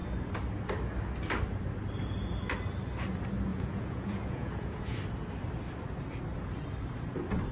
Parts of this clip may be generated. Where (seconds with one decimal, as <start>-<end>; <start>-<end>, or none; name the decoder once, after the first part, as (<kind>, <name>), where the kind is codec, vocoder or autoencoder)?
3.5-5.0 (vocoder, Vocos)